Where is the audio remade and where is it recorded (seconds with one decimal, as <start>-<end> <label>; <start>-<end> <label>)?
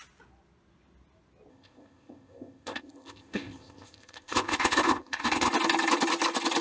0.0-1.5 recorded; 1.5-5.5 remade; 5.5-6.6 recorded